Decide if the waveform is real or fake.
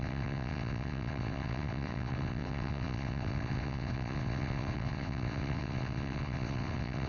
fake